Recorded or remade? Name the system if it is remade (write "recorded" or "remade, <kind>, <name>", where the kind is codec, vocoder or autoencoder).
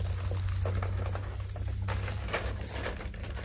recorded